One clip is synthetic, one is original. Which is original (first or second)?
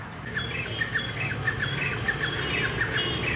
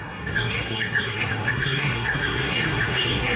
first